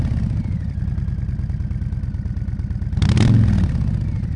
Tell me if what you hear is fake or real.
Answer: real